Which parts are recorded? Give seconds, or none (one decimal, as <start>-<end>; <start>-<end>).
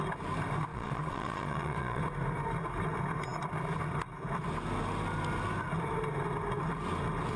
0.0-0.7; 2.0-7.4